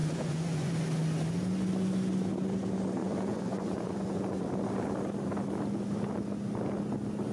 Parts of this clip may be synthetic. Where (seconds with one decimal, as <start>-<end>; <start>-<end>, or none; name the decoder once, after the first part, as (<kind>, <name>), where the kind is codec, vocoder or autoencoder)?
0.0-0.7 (vocoder, Vocos); 3.0-4.5